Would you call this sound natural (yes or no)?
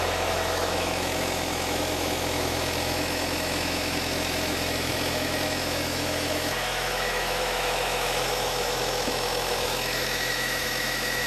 no